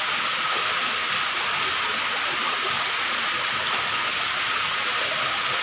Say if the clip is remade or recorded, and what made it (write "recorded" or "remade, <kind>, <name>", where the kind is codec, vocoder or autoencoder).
recorded